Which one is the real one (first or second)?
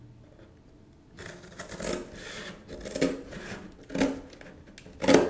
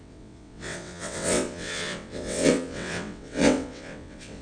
first